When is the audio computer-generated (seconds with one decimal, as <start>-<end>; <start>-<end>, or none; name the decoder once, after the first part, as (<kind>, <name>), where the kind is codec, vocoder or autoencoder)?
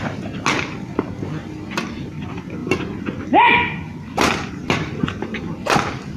none